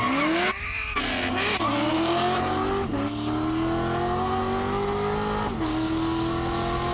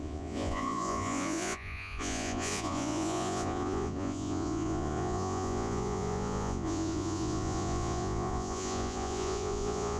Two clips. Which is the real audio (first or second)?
first